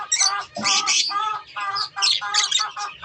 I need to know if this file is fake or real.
real